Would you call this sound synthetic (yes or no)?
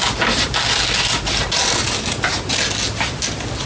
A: no